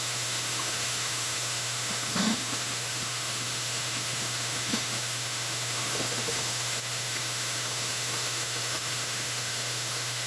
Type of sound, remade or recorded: remade